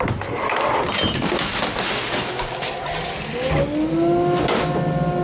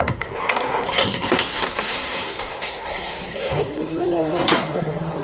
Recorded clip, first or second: first